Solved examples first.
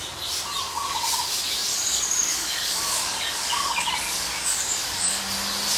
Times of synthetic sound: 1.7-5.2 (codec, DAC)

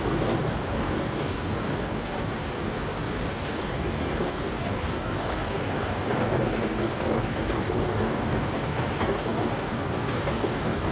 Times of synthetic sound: 0.0-10.9 (codec, DAC)

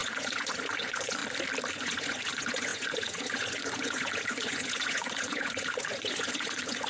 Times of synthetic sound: 0.0-1.2 (vocoder, Vocos); 1.7-6.9

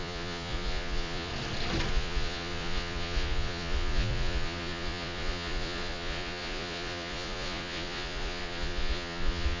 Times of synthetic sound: 0.0-1.3 (vocoder, Vocos); 1.9-9.6